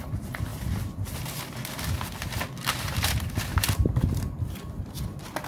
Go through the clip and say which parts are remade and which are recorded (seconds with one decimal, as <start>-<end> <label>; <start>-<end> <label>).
0.0-5.5 recorded